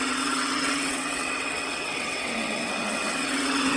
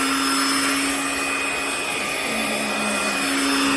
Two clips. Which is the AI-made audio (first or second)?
first